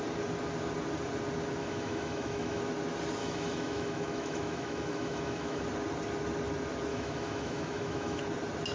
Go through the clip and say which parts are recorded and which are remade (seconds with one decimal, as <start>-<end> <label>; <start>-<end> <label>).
0.0-1.6 recorded; 1.6-2.6 remade; 2.6-3.2 recorded; 3.2-5.6 remade; 5.6-6.9 recorded; 6.9-8.2 remade; 8.2-8.7 recorded